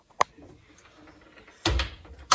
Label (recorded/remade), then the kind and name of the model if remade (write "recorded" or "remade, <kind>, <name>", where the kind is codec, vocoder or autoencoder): recorded